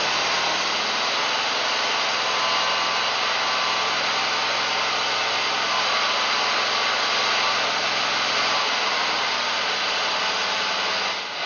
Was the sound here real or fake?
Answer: real